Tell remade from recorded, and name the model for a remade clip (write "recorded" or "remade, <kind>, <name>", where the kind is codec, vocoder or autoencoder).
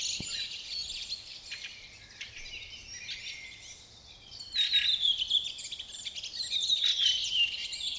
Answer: recorded